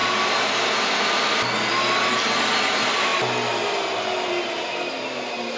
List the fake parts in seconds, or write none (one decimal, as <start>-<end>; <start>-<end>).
none